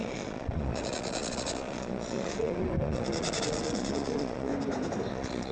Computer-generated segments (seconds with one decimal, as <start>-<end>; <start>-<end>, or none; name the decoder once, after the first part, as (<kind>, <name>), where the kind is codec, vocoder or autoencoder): 0.0-4.5 (vocoder, Vocos); 5.1-5.5